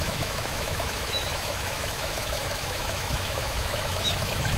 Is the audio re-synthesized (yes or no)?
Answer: yes